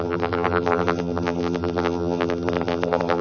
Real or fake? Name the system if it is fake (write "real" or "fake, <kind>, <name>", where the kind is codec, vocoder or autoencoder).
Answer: fake, vocoder, BigVGAN v2